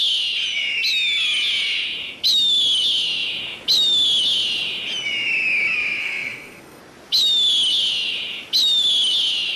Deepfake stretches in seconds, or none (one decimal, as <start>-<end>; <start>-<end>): 6.0-6.8